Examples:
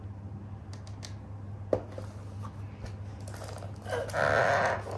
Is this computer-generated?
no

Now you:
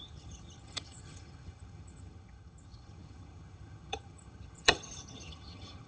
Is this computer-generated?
yes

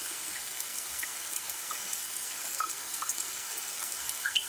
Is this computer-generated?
yes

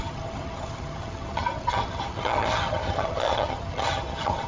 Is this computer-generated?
yes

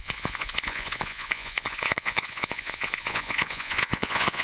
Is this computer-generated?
yes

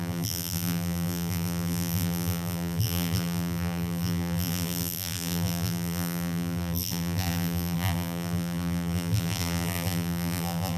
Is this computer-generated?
yes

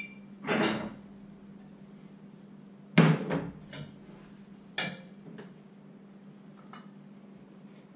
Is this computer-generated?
no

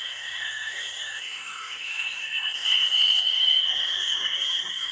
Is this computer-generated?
yes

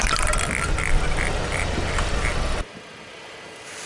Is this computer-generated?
no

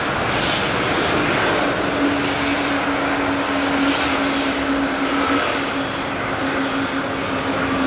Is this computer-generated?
no